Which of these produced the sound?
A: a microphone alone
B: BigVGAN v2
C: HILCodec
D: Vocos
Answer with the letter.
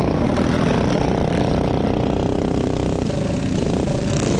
A